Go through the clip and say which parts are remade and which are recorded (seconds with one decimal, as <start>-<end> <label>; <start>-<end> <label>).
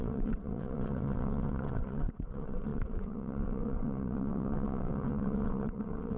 0.0-6.2 remade